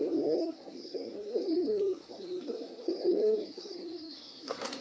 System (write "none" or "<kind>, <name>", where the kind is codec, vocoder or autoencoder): codec, SNAC